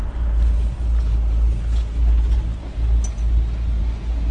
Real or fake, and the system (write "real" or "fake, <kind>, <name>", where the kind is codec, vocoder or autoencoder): real